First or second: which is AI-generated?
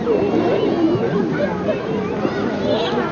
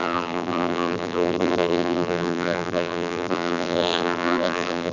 second